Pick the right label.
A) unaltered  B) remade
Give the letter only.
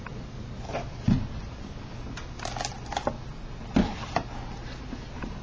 A